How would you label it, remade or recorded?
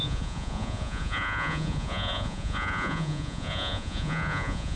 remade